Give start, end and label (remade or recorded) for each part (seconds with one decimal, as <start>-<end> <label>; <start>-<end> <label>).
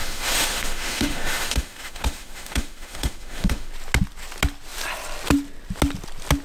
0.0-3.7 remade; 3.7-6.4 recorded